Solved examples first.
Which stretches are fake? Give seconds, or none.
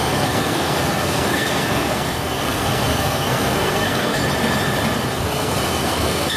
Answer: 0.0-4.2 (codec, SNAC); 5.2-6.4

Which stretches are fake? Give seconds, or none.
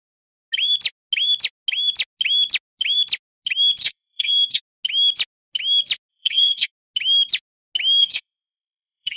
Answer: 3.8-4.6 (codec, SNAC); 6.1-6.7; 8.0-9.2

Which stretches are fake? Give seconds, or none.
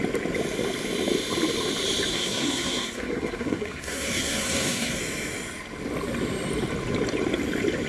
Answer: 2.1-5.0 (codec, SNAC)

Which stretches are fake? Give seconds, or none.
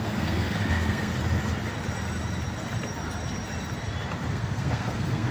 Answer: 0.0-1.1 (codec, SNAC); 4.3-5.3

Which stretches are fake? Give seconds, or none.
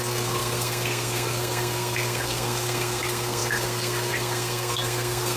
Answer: 0.0-5.4 (codec, SNAC)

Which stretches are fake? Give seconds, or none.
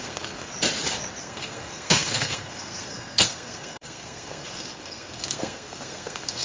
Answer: 0.0-0.5 (codec, SNAC); 1.2-6.4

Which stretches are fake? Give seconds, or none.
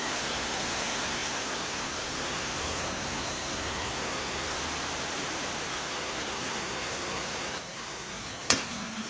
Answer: 0.0-4.6 (codec, SNAC); 5.7-9.1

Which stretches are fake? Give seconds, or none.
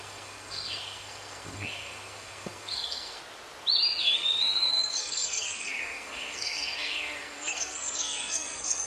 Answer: 0.0-3.2 (codec, SNAC); 4.0-8.9